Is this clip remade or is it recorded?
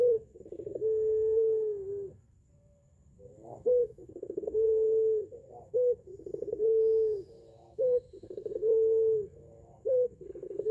remade